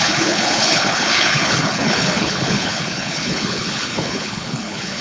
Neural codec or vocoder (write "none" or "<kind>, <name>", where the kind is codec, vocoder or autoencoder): codec, HILCodec